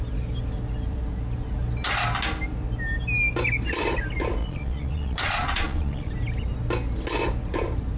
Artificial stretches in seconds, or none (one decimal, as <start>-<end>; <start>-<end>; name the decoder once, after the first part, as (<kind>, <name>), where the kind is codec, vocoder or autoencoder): 4.4-6.1 (vocoder, Vocos)